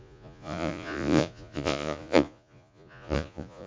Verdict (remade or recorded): remade